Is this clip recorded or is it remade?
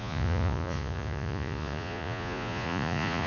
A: remade